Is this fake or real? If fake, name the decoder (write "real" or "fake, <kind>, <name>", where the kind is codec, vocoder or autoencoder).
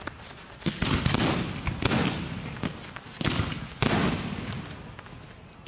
real